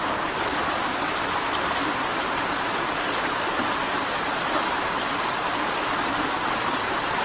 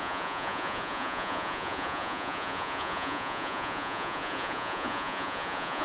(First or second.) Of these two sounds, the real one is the first